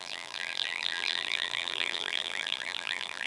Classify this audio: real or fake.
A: fake